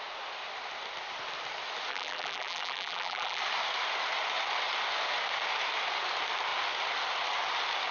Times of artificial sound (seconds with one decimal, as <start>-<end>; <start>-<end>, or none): 1.9-3.4